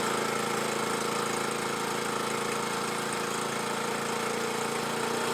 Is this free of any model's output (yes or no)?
yes